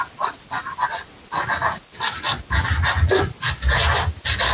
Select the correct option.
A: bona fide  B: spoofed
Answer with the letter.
A